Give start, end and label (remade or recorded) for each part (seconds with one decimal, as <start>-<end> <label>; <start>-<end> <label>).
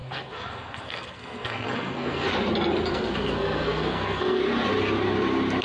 0.0-2.3 remade; 2.3-2.9 recorded; 2.9-4.4 remade; 4.4-5.6 recorded